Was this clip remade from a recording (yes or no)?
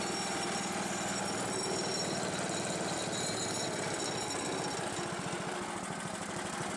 no